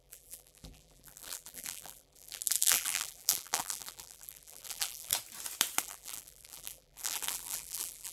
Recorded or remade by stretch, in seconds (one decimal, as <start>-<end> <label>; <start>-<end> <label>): 0.0-5.1 remade; 5.1-5.8 recorded; 5.8-8.1 remade